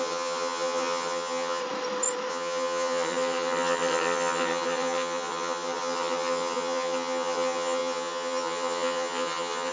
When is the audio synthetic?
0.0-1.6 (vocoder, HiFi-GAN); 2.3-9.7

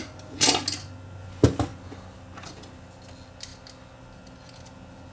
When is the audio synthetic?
none

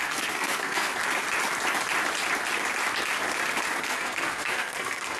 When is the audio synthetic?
0.0-0.9 (codec, SNAC); 3.8-5.2

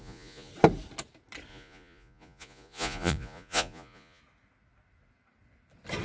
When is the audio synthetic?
0.0-0.5 (vocoder, Vocos); 1.5-4.2

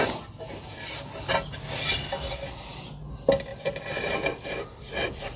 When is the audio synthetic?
3.5-4.2 (vocoder, BigVGAN v2)